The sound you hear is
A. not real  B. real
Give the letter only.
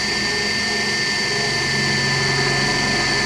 B